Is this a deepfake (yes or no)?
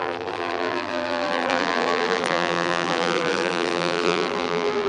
yes